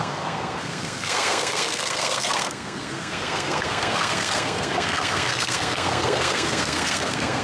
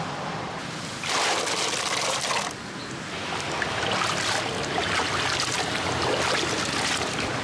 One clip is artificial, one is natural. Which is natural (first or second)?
second